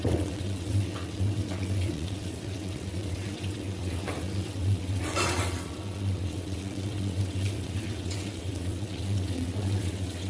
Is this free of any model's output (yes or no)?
no